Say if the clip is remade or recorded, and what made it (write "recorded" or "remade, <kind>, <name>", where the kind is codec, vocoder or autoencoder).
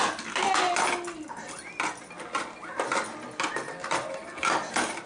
recorded